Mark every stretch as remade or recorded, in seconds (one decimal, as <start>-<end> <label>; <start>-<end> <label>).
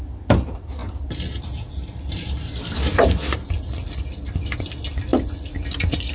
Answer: 0.0-2.9 recorded; 2.9-3.7 remade; 3.7-6.1 recorded